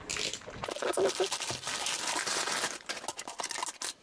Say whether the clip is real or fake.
real